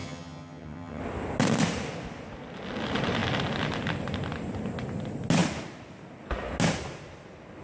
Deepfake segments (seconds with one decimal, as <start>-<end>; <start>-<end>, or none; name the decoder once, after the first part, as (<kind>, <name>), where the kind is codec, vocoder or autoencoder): 0.0-1.0 (vocoder, HiFi-GAN)